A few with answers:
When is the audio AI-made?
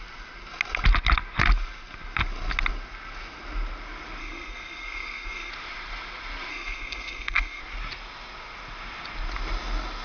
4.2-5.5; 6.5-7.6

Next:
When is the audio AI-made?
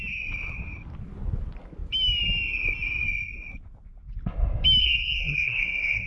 4.8-6.1